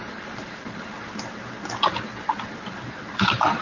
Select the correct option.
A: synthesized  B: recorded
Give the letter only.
A